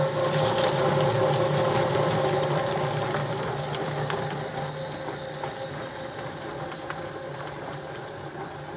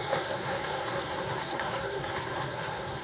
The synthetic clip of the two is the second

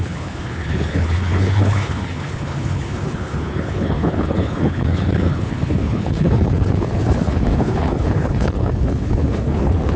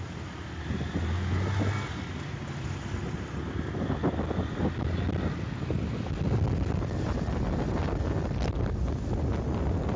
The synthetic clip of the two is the first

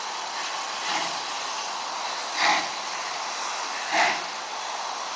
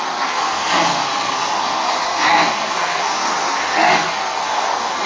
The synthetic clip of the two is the second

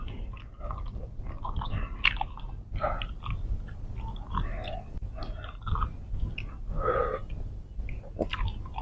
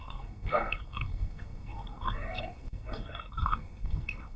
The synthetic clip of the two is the second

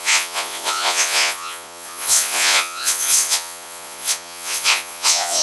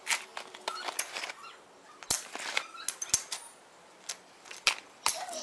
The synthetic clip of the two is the first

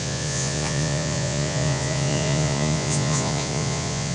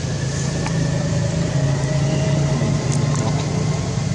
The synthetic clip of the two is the first